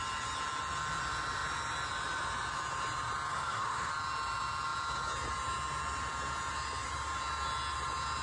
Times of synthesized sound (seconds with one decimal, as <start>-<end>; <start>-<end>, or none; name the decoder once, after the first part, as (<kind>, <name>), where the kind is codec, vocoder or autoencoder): 3.3-3.9 (codec, SNAC)